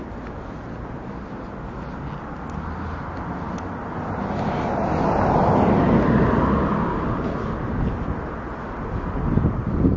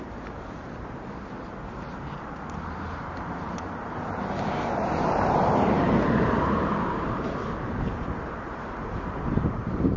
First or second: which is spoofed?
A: second